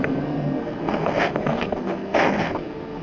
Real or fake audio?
fake